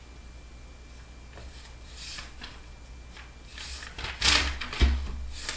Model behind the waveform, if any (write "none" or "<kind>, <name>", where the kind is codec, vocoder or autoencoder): none